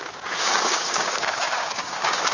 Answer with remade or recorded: remade